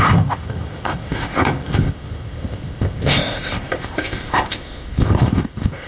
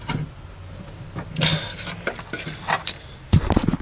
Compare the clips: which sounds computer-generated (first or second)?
first